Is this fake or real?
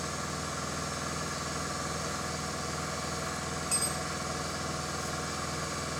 real